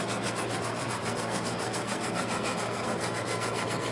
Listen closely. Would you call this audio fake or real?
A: fake